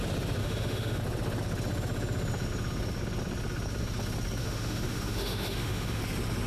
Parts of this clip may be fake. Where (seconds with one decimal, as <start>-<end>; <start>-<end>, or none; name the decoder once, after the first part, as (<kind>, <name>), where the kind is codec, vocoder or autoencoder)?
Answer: 0.4-1.0 (autoencoder, DAC-VAE); 4.4-6.0